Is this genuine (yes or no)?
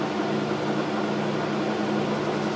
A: yes